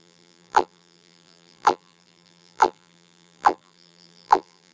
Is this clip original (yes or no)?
no